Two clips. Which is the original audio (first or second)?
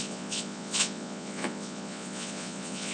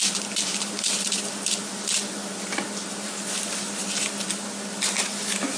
second